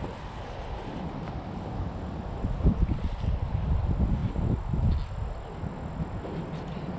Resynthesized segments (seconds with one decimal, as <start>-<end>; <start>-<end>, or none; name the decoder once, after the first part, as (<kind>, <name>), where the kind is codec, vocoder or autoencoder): none